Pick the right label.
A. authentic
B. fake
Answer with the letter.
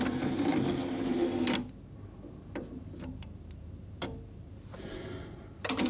B